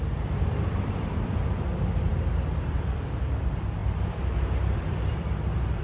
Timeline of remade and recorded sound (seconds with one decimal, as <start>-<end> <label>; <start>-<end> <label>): 0.0-2.1 remade; 2.1-3.0 recorded; 3.0-5.8 remade